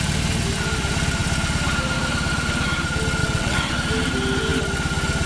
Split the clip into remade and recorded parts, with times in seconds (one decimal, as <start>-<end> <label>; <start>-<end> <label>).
0.0-3.2 recorded; 3.2-3.7 remade; 3.7-5.3 recorded